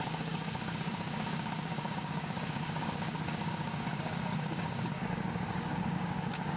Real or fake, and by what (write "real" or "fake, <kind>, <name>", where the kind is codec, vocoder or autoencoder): fake, codec, DAC